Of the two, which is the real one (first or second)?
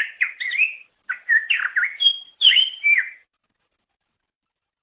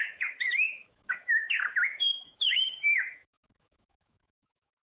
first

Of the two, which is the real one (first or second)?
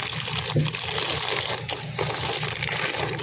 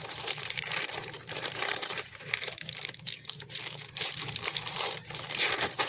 first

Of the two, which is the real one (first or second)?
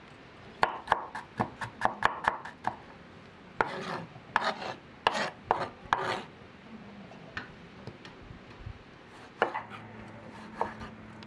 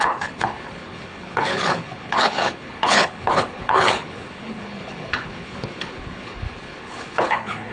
first